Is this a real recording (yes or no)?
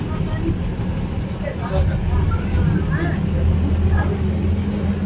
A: yes